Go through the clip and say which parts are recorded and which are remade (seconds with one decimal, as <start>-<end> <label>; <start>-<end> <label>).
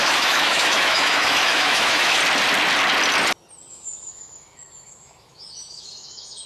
0.0-2.2 remade; 2.2-3.7 recorded; 3.7-6.5 remade